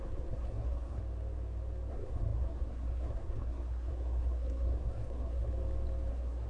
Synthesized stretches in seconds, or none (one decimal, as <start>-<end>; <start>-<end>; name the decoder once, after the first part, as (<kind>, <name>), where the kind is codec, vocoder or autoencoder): 0.0-1.0 (codec, SNAC); 1.9-5.5; 6.1-6.5